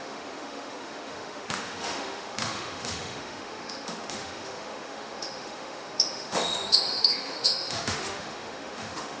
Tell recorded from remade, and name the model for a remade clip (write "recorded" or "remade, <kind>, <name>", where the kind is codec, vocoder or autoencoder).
remade, autoencoder, DAC-VAE